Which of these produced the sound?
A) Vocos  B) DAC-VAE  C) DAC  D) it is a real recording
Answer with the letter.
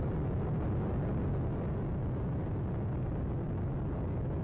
D